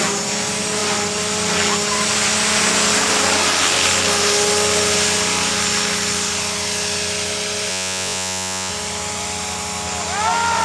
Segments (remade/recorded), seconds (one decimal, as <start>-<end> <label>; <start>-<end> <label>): 0.0-7.7 recorded; 7.7-8.7 remade; 8.7-10.6 recorded